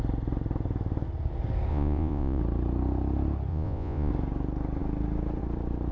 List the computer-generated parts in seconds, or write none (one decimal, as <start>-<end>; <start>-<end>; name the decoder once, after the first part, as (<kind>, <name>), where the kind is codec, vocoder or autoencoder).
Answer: 1.7-2.4 (vocoder, Vocos); 3.5-4.1